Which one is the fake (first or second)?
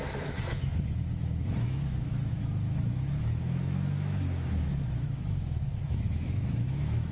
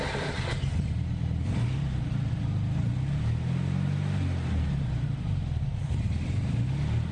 first